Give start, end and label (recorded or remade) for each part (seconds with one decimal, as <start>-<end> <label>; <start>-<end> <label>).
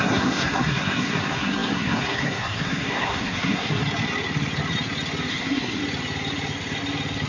0.0-3.8 remade; 3.8-5.3 recorded; 5.3-5.8 remade; 5.8-7.3 recorded